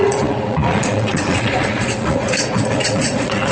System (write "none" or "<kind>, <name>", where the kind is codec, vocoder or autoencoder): vocoder, Vocos